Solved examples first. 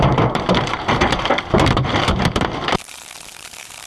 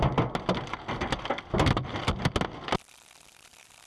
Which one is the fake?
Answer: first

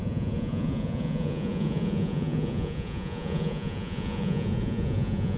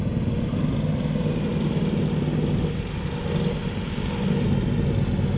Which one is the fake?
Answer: first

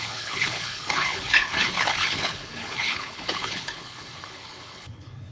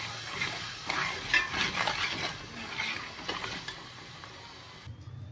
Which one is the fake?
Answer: first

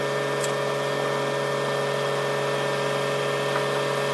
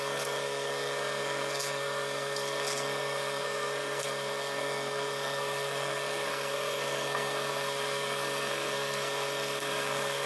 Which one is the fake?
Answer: second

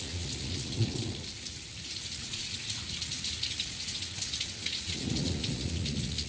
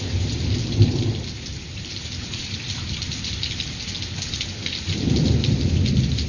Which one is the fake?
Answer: first